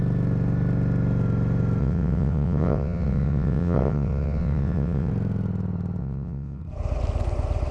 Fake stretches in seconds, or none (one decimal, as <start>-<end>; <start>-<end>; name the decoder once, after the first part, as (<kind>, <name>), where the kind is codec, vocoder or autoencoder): 1.8-5.1 (vocoder, WaveNeXt); 6.0-6.6